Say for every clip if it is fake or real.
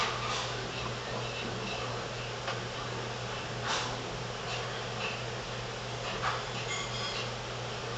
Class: real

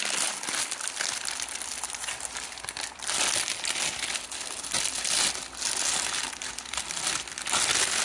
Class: real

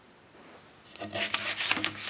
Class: real